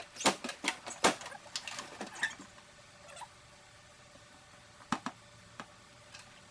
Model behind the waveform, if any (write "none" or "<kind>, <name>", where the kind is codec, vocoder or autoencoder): none